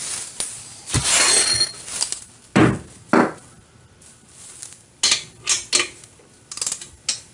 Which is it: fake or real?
real